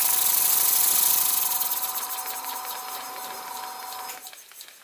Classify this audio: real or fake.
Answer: real